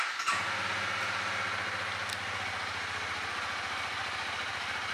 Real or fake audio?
real